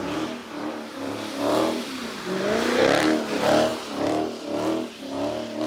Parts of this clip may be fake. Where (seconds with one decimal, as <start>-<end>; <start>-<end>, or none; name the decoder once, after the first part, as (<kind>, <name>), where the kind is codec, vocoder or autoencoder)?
0.4-2.2 (vocoder, BigVGAN v2); 3.7-5.7